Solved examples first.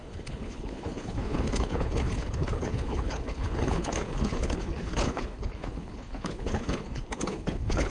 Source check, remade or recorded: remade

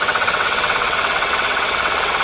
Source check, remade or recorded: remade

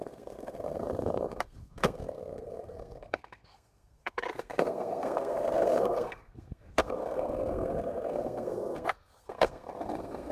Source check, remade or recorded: remade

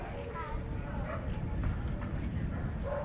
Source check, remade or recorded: recorded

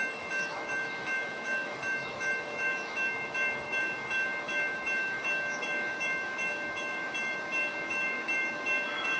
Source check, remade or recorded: remade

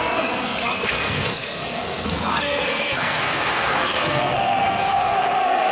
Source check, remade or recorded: remade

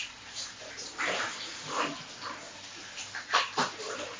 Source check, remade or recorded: recorded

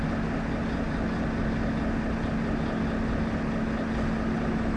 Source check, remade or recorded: recorded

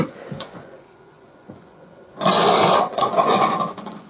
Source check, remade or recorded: remade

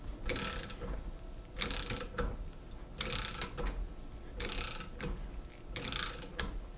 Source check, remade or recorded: recorded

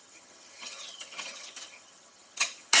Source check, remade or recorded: remade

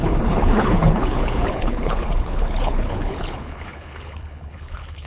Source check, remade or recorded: remade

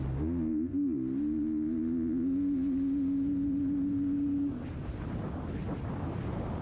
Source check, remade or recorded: recorded